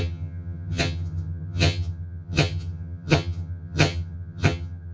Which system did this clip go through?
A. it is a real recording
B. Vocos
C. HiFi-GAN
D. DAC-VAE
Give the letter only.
C